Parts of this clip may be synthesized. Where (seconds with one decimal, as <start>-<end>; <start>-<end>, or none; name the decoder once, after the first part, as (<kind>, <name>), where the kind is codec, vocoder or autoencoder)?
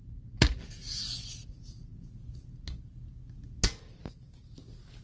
none